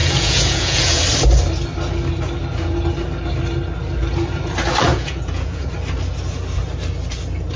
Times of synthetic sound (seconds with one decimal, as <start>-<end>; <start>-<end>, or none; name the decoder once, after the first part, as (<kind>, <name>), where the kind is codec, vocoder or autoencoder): 0.0-1.0 (vocoder, Vocos); 4.9-5.7